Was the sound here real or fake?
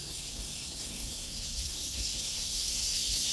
fake